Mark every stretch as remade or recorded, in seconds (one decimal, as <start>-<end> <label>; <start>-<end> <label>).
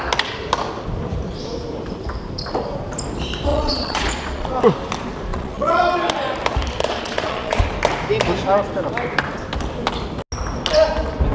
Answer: 0.0-3.5 recorded; 3.5-4.5 remade; 4.5-5.3 recorded; 5.3-5.8 remade; 5.8-6.8 recorded; 6.8-7.6 remade; 7.6-11.3 recorded